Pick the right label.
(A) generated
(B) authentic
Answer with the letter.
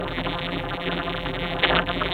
A